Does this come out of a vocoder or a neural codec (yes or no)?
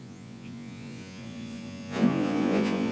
yes